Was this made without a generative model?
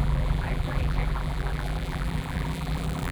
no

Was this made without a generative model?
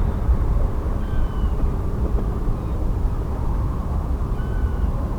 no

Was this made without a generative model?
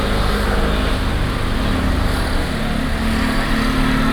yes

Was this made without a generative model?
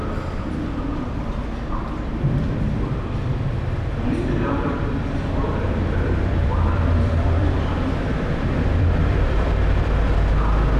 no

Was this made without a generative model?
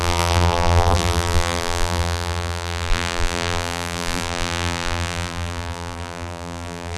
no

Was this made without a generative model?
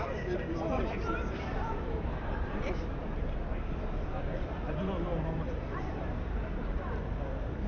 no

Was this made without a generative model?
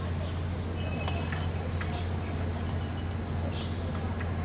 yes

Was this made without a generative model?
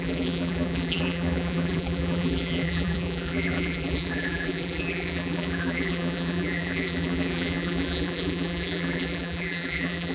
no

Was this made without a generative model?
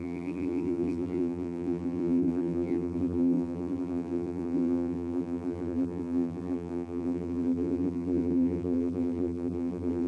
no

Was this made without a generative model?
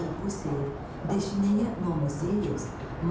yes